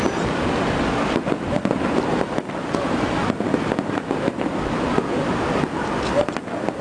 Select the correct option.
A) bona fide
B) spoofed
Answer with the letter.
A